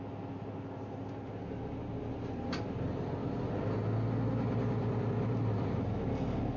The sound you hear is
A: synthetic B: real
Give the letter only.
B